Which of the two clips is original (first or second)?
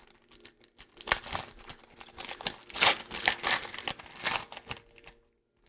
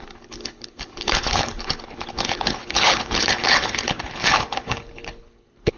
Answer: first